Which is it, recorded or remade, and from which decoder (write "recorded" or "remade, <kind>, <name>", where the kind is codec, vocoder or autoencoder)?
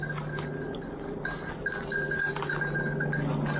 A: recorded